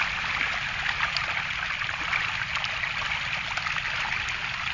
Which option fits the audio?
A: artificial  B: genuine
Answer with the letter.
B